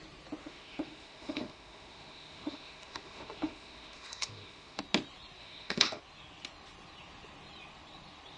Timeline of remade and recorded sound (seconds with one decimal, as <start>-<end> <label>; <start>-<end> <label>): 0.0-0.4 recorded; 0.4-4.8 remade; 4.8-5.4 recorded; 5.4-6.0 remade; 6.0-8.4 recorded